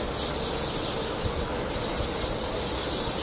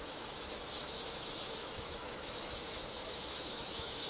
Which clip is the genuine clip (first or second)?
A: first